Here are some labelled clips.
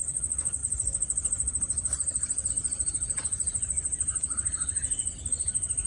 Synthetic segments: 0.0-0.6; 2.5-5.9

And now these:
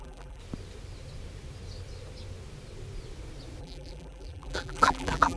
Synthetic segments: 0.0-0.4; 3.6-5.4

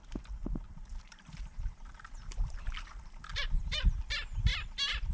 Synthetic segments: 0.9-4.0